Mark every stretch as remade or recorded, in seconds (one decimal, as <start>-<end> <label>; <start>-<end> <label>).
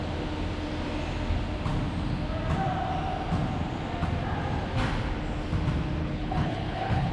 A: 0.0-6.0 recorded; 6.0-7.1 remade